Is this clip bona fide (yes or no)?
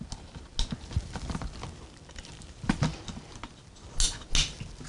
yes